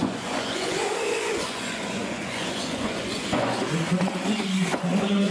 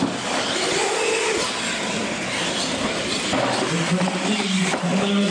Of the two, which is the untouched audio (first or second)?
second